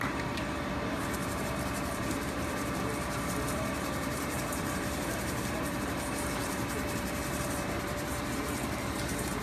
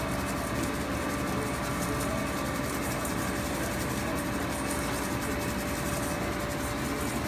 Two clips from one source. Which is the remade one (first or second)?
first